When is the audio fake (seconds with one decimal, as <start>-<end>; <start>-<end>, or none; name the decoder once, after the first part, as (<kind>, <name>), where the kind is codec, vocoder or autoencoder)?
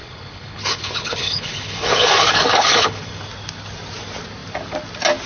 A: 0.0-3.2 (codec, HILCodec)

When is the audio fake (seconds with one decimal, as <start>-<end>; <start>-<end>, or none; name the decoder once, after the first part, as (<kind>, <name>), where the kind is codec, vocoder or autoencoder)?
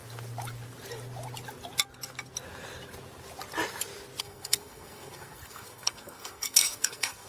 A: 4.2-7.3 (codec, SNAC)